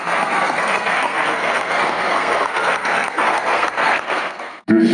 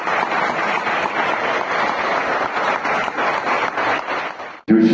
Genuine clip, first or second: second